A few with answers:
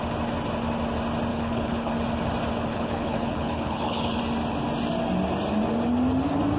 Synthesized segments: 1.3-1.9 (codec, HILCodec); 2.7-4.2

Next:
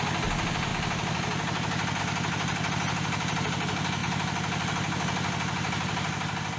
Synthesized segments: none